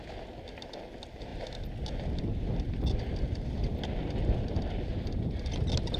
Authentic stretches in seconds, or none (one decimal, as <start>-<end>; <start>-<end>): 0.0-6.0